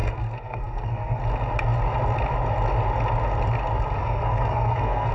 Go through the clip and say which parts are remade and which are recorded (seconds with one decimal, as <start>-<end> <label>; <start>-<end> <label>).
0.0-1.2 remade; 1.2-4.0 recorded; 4.0-5.1 remade